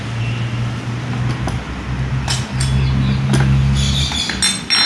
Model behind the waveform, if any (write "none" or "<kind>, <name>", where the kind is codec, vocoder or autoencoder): none